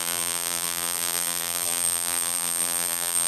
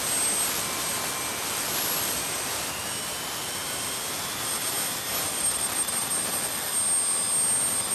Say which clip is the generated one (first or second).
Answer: first